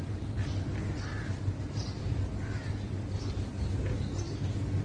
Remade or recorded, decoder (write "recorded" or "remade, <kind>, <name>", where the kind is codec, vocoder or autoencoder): recorded